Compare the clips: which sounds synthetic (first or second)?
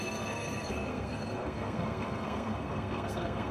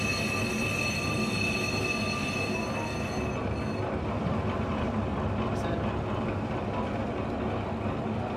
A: first